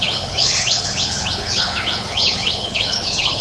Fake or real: fake